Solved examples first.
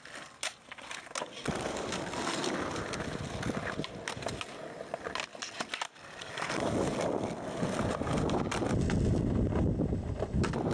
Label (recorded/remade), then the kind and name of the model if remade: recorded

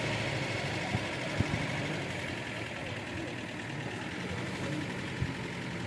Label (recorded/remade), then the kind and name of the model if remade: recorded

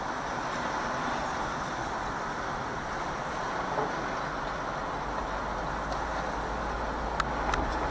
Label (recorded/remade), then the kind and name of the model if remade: recorded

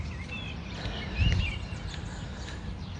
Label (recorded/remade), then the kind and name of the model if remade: recorded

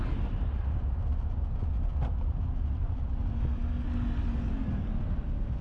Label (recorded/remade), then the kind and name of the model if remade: recorded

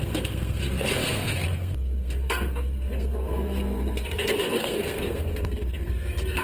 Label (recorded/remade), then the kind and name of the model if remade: remade, codec, SNAC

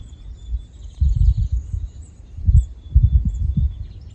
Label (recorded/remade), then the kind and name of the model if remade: recorded